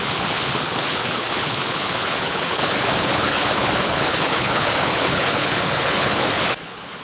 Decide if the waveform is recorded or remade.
remade